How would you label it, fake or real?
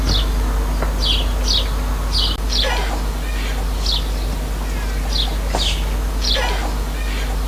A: real